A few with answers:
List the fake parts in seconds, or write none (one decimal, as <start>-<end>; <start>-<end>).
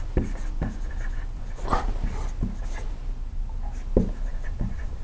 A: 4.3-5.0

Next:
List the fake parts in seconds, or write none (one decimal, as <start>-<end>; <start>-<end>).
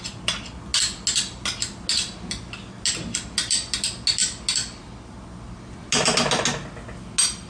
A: none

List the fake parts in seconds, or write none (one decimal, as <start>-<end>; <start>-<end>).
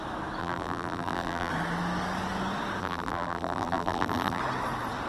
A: 0.4-1.5; 2.8-4.4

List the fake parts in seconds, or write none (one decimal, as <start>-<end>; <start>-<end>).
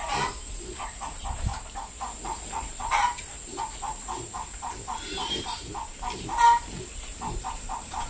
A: 0.0-8.1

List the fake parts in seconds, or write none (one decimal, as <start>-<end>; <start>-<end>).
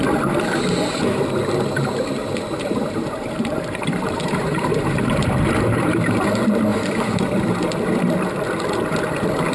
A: 2.2-6.2; 6.7-7.4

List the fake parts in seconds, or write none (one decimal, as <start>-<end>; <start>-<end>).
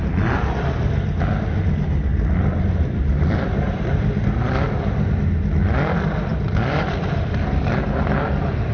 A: 2.1-4.0; 6.3-7.1